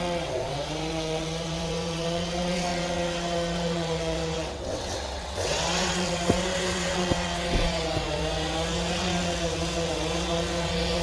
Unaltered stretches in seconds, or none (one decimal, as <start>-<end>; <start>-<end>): none